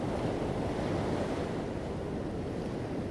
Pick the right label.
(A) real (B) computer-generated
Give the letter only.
A